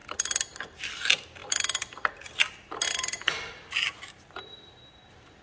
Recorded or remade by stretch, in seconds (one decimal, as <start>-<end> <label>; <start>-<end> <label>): 0.0-5.4 recorded